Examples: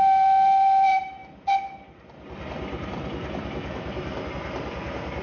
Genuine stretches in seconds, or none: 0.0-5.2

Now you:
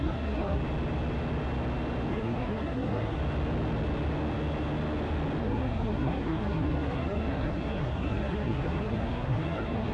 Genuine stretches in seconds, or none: 0.6-2.1; 3.2-5.4